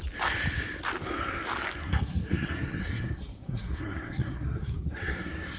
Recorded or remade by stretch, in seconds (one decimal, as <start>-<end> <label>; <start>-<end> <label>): 0.0-1.8 recorded; 1.8-5.6 remade

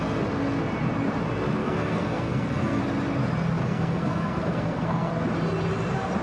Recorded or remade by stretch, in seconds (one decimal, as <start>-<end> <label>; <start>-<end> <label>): 0.0-1.6 recorded; 1.6-2.8 remade; 2.8-3.6 recorded; 3.6-5.1 remade; 5.1-6.2 recorded

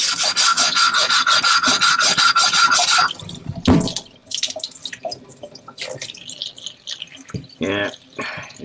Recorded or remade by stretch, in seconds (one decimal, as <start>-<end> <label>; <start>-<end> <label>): 0.0-0.5 recorded; 0.5-1.1 remade; 1.1-8.6 recorded

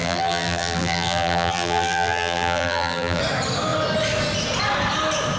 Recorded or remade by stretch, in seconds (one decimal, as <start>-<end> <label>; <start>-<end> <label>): 0.0-3.2 remade; 3.2-5.4 recorded

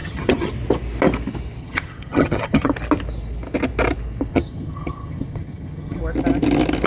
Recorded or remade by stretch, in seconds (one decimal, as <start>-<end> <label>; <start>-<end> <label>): 0.0-0.5 remade; 0.5-1.6 recorded; 1.6-2.7 remade; 2.7-4.3 recorded; 4.3-6.0 remade; 6.0-6.9 recorded

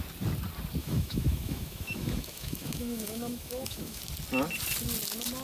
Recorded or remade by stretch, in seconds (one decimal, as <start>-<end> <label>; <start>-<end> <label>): 0.0-0.8 recorded; 0.8-4.0 remade; 4.0-5.4 recorded